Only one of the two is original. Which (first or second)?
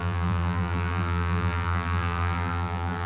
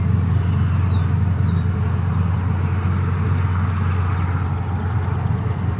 second